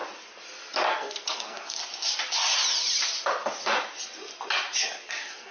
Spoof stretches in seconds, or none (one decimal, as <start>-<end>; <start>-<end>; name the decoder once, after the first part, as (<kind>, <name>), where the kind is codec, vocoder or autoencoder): 0.9-1.8 (codec, SNAC); 5.1-5.5